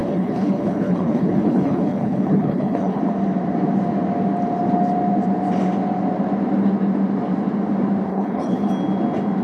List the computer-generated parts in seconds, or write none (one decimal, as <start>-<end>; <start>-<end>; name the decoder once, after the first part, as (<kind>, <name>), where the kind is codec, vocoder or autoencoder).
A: 0.0-3.0 (codec, HILCodec); 8.1-8.7